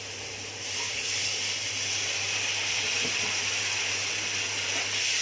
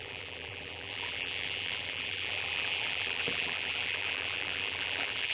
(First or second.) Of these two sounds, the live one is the first